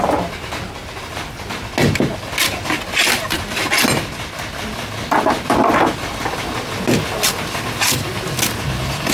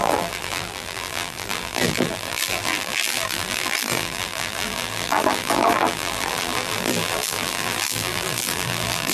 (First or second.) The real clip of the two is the first